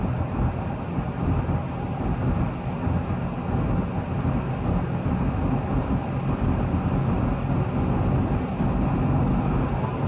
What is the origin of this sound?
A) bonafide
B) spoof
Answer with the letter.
A